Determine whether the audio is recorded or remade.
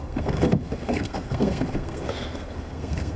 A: remade